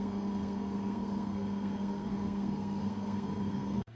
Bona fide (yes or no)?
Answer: no